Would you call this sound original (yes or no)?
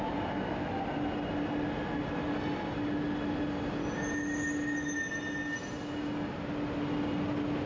yes